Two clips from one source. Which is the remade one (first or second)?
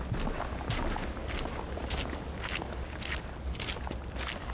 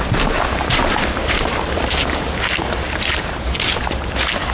second